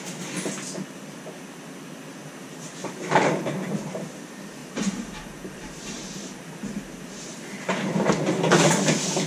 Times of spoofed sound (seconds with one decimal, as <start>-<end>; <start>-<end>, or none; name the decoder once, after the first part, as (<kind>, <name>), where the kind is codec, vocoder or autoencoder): 2.2-4.0 (vocoder, BigVGAN v2); 4.6-7.2